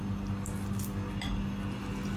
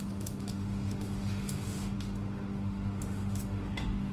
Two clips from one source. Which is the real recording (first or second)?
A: first